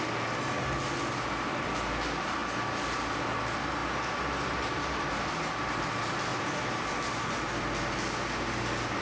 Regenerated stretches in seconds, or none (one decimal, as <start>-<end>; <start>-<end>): none